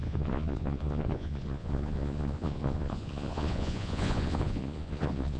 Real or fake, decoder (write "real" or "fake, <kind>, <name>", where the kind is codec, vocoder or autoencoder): fake, vocoder, Vocos